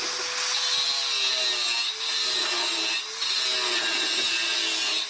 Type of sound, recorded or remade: recorded